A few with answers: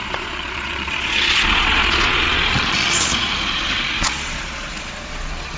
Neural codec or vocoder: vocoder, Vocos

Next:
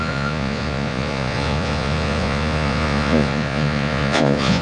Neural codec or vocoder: vocoder, Vocos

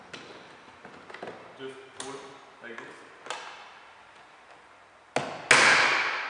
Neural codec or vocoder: none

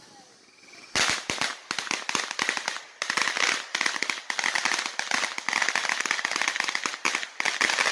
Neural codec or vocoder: none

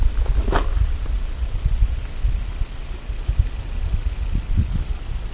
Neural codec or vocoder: none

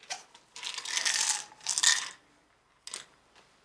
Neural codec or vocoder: none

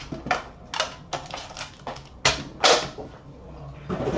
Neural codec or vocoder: none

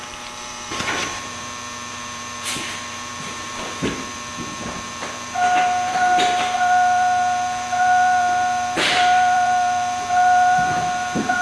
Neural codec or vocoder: vocoder, BigVGAN v2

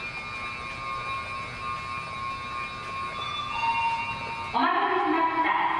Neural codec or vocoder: none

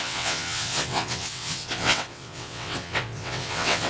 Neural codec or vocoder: vocoder, WaveNeXt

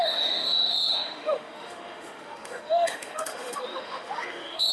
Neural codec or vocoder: autoencoder, DAC-VAE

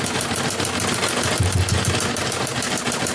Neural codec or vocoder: none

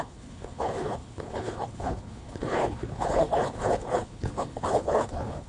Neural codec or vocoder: codec, HILCodec